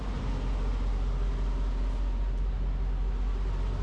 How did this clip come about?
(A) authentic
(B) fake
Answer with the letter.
A